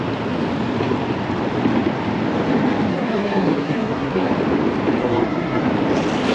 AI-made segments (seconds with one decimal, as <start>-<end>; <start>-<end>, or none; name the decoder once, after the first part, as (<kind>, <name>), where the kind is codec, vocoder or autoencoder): 2.9-4.3 (codec, SNAC); 5.0-5.6